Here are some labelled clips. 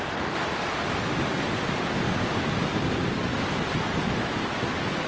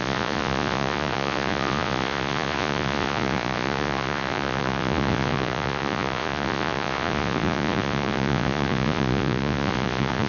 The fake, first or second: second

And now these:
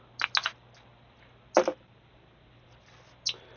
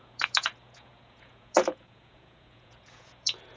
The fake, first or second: second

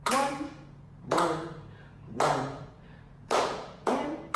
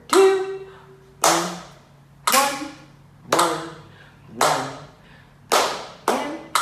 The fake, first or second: first